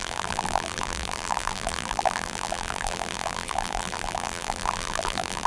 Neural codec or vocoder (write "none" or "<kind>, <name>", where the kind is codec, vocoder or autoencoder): vocoder, BigVGAN v2